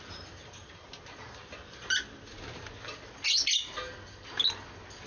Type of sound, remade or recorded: recorded